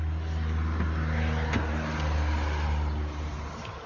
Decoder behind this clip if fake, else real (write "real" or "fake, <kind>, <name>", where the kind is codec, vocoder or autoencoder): real